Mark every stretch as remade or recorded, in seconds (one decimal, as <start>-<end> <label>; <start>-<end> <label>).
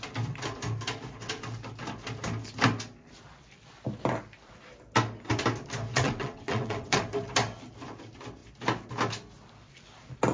0.0-5.9 recorded; 5.9-7.0 remade; 7.0-10.3 recorded